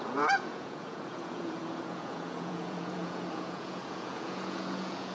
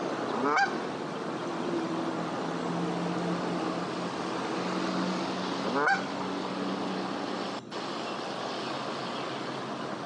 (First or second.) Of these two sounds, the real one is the second